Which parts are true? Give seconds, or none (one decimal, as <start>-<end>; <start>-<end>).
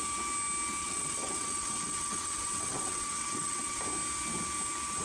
0.0-0.8; 3.8-5.0